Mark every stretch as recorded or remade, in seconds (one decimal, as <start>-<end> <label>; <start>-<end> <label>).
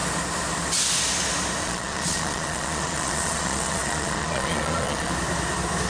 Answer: 0.0-1.6 recorded; 1.6-5.1 remade; 5.1-5.9 recorded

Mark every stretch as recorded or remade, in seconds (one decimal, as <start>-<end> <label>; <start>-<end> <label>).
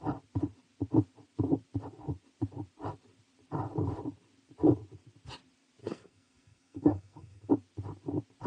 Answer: 0.0-5.8 recorded; 5.8-7.5 remade; 7.5-8.5 recorded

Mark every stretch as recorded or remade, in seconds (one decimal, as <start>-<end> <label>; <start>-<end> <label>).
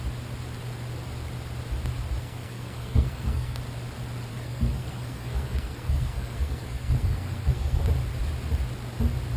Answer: 0.0-2.2 recorded; 2.2-3.6 remade; 3.6-4.3 recorded; 4.3-7.8 remade; 7.8-9.4 recorded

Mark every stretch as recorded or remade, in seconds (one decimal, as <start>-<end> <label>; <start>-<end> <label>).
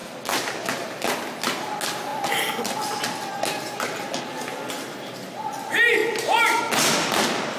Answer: 0.0-7.6 recorded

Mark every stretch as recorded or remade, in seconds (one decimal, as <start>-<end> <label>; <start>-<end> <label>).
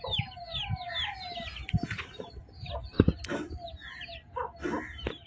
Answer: 0.0-5.3 recorded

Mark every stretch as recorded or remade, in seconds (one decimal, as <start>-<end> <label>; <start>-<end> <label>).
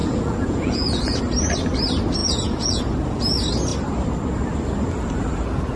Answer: 0.0-1.2 remade; 1.2-2.2 recorded; 2.2-2.8 remade; 2.8-5.8 recorded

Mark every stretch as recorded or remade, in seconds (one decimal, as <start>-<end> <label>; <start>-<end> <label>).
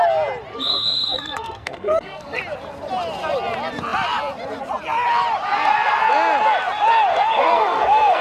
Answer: 0.0-0.5 recorded; 0.5-2.4 remade; 2.4-7.1 recorded; 7.1-8.2 remade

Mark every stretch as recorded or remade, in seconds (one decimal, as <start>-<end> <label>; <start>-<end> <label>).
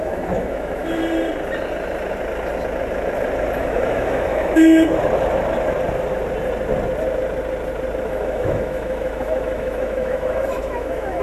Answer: 0.0-1.0 remade; 1.0-3.6 recorded; 3.6-5.0 remade; 5.0-8.0 recorded; 8.0-11.2 remade